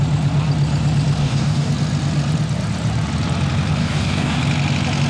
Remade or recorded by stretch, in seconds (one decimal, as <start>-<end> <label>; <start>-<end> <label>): 0.0-1.2 recorded; 1.2-1.7 remade; 1.7-3.8 recorded; 3.8-4.4 remade; 4.4-5.1 recorded